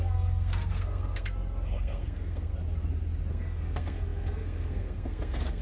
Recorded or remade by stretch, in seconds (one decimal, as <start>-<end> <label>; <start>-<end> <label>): 0.0-2.5 remade; 2.5-3.3 recorded; 3.3-5.6 remade

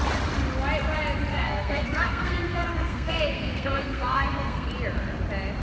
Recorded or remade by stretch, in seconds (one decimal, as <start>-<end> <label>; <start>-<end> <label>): 0.0-1.3 recorded; 1.3-4.7 remade; 4.7-5.6 recorded

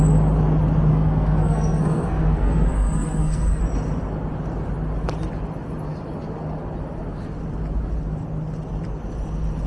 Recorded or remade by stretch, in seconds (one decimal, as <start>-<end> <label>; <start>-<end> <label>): 0.0-0.9 recorded; 0.9-3.6 remade; 3.6-9.7 recorded

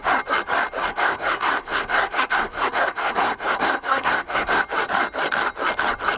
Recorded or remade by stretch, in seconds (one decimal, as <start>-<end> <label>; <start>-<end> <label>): 0.0-0.9 recorded; 0.9-4.6 remade; 4.6-6.2 recorded

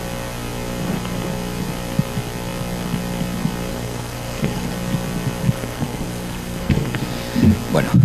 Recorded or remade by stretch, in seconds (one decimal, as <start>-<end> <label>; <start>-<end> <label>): 0.0-3.7 recorded; 3.7-4.7 remade; 4.7-5.4 recorded; 5.4-7.0 remade; 7.0-8.0 recorded

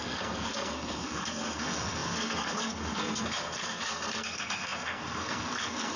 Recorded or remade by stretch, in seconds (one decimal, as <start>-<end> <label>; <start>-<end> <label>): 0.0-6.0 remade

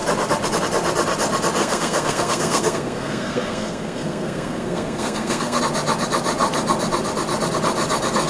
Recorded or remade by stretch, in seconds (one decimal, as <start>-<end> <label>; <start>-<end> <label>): 0.0-1.6 recorded; 1.6-5.6 remade; 5.6-8.3 recorded